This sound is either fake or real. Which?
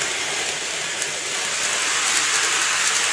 real